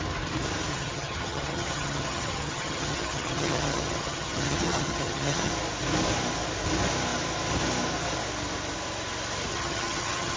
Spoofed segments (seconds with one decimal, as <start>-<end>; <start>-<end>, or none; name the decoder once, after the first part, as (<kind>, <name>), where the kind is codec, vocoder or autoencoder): 0.7-5.5 (vocoder, HiFi-GAN); 9.5-10.4